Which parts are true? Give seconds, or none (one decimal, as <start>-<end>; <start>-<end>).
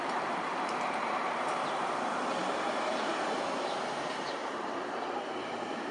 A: none